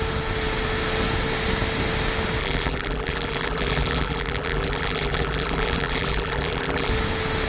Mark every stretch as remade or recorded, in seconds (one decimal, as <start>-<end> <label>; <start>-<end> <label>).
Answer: 0.0-2.4 recorded; 2.4-6.9 remade; 6.9-7.5 recorded

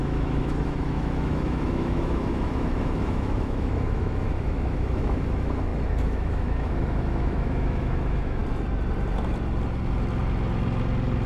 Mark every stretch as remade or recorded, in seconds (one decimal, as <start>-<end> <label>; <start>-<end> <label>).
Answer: 0.0-8.4 remade; 8.4-11.3 recorded